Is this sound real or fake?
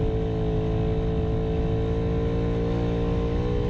real